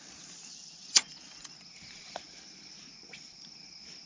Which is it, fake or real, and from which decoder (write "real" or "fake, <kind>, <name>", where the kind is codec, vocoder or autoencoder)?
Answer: real